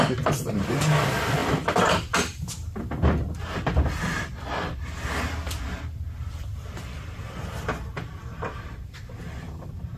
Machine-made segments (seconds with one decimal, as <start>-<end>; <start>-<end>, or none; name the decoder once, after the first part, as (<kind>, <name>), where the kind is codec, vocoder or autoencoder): none